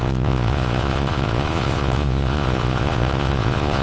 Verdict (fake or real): fake